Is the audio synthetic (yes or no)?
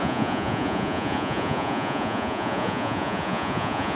yes